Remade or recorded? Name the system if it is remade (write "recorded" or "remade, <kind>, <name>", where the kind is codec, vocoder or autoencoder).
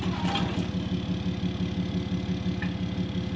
recorded